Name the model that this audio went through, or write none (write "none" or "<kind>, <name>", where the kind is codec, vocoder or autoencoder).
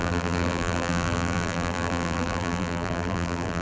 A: vocoder, BigVGAN v2